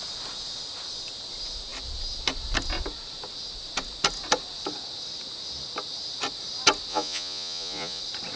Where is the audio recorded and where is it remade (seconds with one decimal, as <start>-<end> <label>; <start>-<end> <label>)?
0.0-6.9 recorded; 6.9-8.0 remade; 8.0-8.4 recorded